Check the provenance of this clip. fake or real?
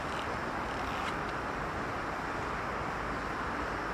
real